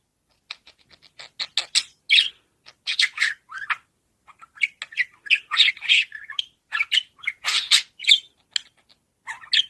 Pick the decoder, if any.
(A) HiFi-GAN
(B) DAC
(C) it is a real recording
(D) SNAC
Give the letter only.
C